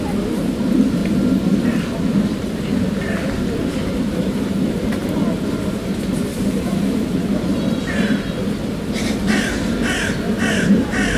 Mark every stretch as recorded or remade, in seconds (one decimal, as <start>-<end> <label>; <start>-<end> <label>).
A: 0.0-1.0 remade; 1.0-3.6 recorded; 3.6-5.0 remade; 5.0-6.4 recorded; 6.4-7.5 remade; 7.5-10.5 recorded; 10.5-11.2 remade